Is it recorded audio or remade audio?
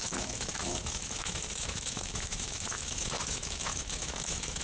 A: remade